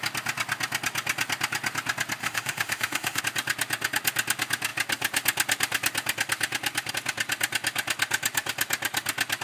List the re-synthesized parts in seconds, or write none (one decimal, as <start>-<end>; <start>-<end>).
2.2-3.2